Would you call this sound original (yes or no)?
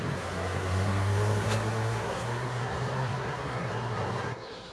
no